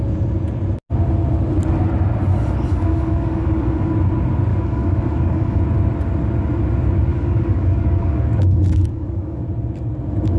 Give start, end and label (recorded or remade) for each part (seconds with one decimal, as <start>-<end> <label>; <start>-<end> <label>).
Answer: 0.0-2.7 recorded; 2.7-3.9 remade; 3.9-4.5 recorded; 4.5-5.6 remade; 5.6-7.1 recorded; 7.1-9.4 remade; 9.4-10.4 recorded

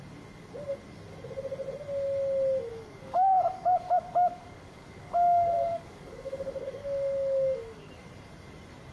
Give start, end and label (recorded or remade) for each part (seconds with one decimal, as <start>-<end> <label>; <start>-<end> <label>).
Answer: 0.0-2.7 recorded; 2.7-7.9 remade; 7.9-8.9 recorded

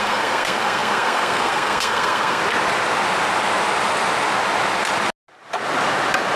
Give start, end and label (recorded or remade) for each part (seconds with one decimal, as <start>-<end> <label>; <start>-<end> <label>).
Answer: 0.0-2.4 remade; 2.4-6.4 recorded

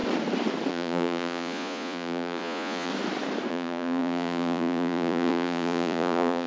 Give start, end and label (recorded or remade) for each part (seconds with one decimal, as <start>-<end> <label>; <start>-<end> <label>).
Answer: 0.0-0.7 recorded; 0.7-2.9 remade; 2.9-3.5 recorded; 3.5-6.5 remade

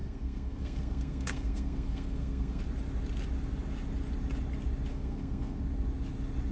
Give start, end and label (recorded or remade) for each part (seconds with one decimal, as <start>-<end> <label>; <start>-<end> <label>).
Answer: 0.0-2.6 remade; 2.6-4.9 recorded; 4.9-5.6 remade; 5.6-6.5 recorded

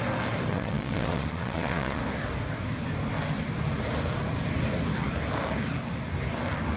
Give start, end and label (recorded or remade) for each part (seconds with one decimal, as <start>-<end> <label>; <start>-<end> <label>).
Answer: 0.0-0.5 recorded; 0.5-2.0 remade; 2.0-6.8 recorded